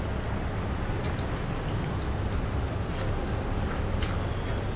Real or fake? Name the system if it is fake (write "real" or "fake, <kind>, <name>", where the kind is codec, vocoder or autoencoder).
real